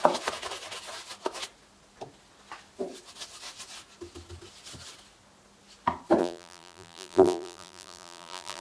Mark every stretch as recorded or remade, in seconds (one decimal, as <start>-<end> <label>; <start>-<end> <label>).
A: 0.0-6.2 recorded; 6.2-8.6 remade